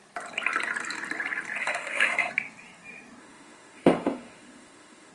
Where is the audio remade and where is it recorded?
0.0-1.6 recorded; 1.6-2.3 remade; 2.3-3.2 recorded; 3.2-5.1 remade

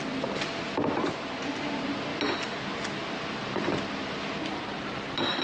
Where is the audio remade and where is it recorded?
0.0-5.4 recorded

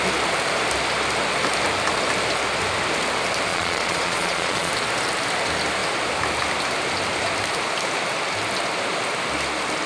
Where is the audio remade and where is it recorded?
0.0-3.5 recorded; 3.5-4.7 remade; 4.7-9.9 recorded